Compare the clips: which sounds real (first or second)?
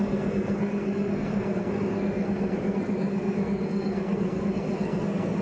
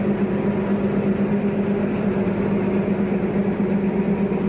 second